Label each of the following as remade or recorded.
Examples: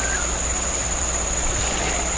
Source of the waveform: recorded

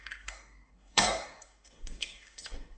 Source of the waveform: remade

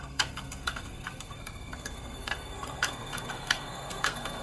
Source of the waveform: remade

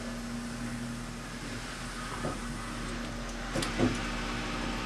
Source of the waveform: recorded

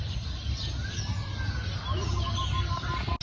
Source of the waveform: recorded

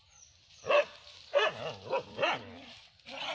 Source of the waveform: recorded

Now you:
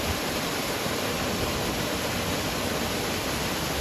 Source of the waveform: recorded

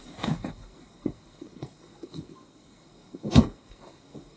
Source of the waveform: remade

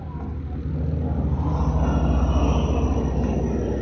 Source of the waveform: recorded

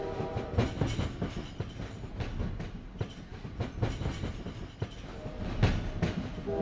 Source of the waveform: recorded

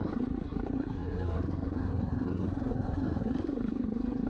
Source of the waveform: remade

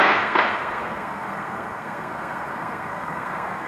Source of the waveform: remade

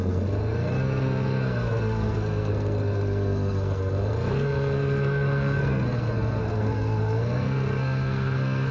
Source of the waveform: remade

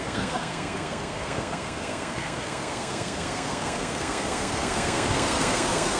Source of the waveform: remade